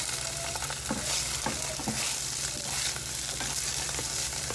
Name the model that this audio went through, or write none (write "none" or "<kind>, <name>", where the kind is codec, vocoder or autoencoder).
none